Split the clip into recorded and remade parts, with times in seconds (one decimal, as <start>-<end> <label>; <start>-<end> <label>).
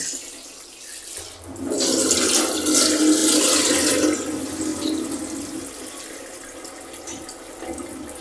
0.0-8.2 recorded